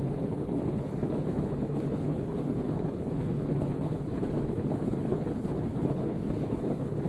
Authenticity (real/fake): fake